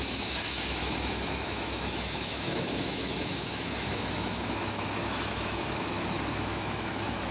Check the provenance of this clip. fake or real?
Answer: fake